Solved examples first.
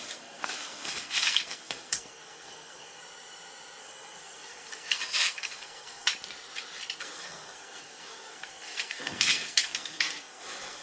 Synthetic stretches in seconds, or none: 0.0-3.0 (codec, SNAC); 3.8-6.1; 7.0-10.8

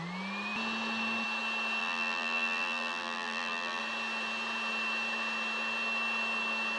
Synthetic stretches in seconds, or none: 1.8-3.8 (vocoder, BigVGAN v2)

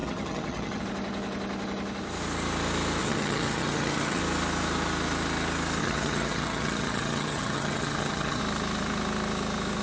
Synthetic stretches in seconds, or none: 0.0-0.8 (vocoder, HiFi-GAN); 3.0-4.2; 5.8-8.4

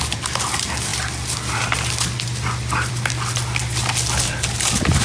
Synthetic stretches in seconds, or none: none

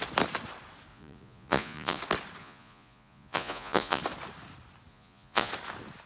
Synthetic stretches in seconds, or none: 0.9-2.0 (vocoder, Vocos); 2.4-4.0; 4.9-5.5